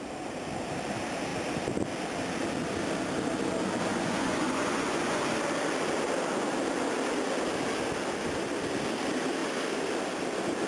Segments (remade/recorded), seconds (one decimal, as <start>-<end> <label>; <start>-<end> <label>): 0.0-3.9 recorded; 3.9-5.2 remade; 5.2-10.7 recorded